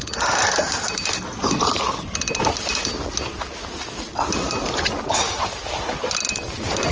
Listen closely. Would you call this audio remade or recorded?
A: recorded